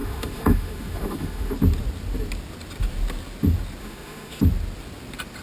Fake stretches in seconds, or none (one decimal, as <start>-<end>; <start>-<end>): 0.0-1.5; 3.8-4.4